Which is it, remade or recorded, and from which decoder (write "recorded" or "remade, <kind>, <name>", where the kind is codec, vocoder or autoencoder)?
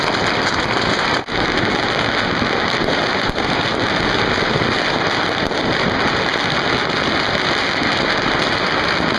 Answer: recorded